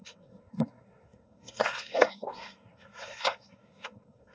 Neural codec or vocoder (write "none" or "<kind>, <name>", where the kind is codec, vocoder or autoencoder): codec, SNAC